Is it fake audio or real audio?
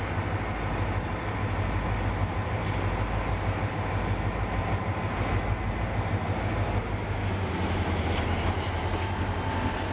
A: real